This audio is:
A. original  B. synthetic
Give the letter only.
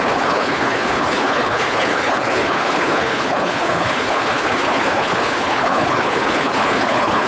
B